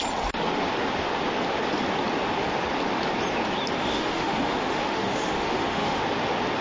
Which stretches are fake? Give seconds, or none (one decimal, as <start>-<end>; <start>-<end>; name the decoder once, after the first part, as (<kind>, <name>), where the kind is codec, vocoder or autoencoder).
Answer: 3.8-6.0 (autoencoder, DAC-VAE)